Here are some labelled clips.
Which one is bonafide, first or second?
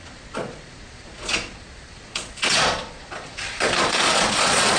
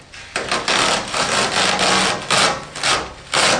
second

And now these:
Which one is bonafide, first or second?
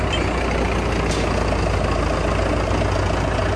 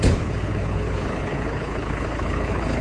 first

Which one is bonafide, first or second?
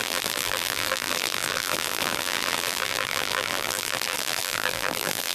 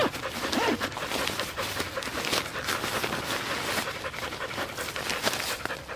second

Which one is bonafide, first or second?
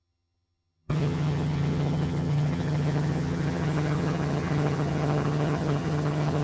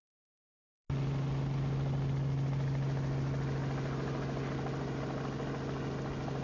second